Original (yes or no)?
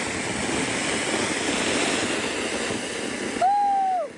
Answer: yes